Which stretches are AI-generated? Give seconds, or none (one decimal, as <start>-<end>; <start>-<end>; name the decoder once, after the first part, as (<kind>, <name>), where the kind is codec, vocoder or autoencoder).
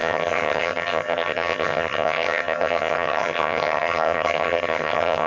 0.0-5.3 (vocoder, HiFi-GAN)